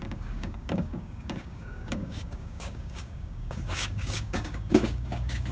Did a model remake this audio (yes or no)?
yes